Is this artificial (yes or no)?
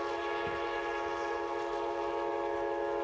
no